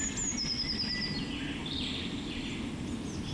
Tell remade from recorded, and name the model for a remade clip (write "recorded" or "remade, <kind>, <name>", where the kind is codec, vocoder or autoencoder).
recorded